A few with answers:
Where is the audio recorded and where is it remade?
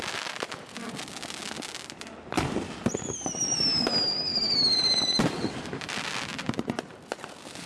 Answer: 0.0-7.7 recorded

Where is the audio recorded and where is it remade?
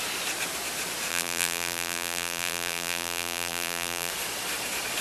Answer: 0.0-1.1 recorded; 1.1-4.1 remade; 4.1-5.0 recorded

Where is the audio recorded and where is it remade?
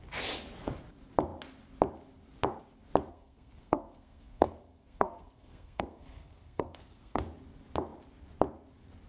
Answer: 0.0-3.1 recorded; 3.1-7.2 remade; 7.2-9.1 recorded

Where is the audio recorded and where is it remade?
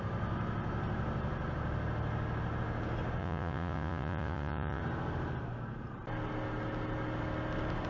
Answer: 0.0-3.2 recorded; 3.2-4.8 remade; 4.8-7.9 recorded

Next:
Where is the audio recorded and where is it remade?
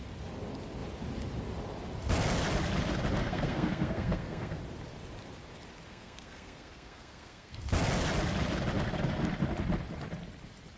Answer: 0.0-3.2 recorded; 3.2-4.6 remade; 4.6-5.9 recorded; 5.9-7.6 remade; 7.6-10.8 recorded